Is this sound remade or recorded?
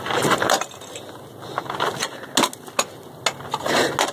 recorded